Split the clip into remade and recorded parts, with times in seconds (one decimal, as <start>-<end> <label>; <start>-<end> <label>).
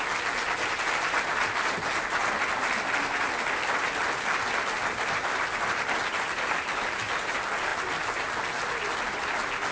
0.0-9.7 recorded